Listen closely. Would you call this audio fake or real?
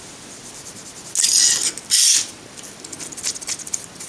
real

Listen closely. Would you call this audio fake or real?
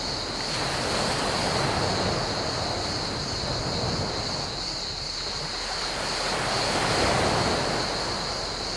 real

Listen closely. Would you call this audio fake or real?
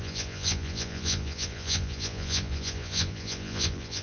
fake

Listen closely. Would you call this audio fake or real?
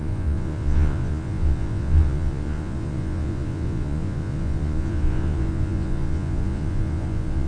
fake